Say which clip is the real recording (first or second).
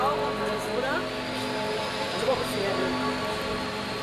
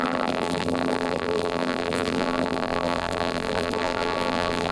first